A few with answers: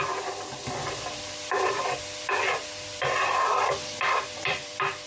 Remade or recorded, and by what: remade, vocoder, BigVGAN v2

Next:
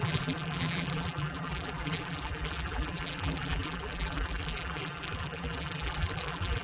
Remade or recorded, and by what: remade, vocoder, BigVGAN v2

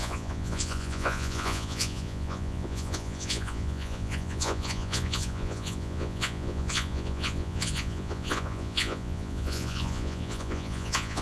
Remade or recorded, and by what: remade, vocoder, Vocos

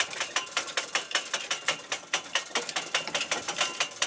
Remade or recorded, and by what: remade, vocoder, BigVGAN v2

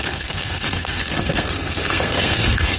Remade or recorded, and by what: remade, codec, SNAC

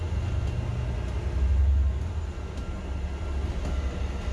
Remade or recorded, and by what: recorded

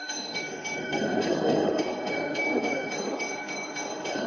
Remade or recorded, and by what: remade, autoencoder, DAC-VAE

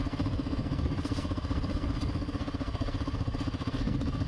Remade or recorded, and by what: remade, codec, SNAC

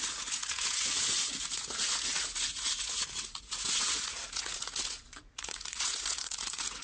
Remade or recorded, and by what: remade, vocoder, Vocos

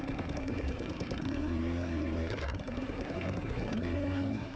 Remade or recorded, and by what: remade, codec, SNAC